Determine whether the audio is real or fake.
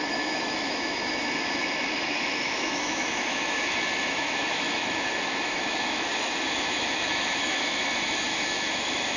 fake